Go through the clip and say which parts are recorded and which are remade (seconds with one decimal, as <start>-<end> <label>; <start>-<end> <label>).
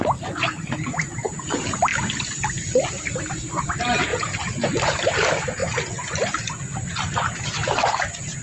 0.0-1.9 remade; 1.9-2.8 recorded; 2.8-4.1 remade; 4.1-4.8 recorded; 4.8-5.6 remade; 5.6-7.1 recorded; 7.1-8.4 remade